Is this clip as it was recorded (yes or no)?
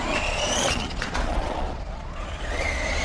no